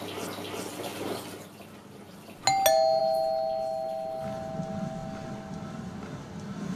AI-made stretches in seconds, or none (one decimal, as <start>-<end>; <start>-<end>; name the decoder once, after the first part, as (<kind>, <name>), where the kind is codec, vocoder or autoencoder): none